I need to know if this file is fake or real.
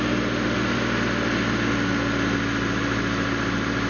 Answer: real